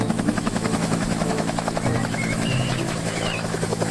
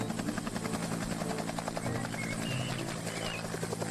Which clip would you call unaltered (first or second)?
second